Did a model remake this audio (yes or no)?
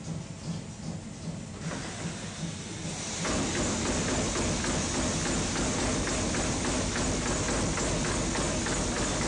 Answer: no